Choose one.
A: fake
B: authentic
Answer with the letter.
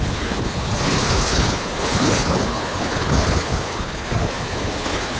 A